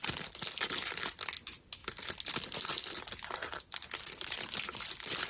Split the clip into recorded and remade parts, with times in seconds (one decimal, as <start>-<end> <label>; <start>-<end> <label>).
0.0-5.3 recorded